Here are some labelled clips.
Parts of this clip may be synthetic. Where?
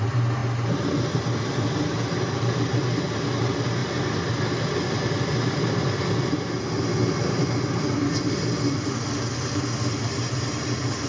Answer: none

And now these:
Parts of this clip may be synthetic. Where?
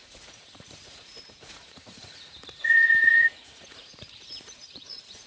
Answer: 0.0-5.3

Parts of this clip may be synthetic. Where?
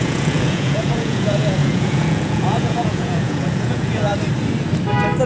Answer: 0.0-4.1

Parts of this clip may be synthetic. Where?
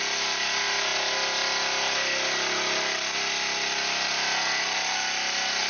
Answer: none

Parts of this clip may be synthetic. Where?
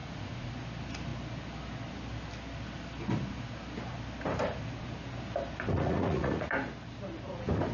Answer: 0.0-0.5; 5.7-6.5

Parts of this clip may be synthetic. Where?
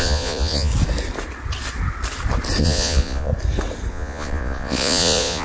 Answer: 0.0-0.7; 2.6-3.3; 3.9-5.4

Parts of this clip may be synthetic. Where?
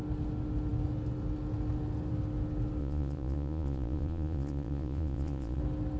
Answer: 2.8-5.6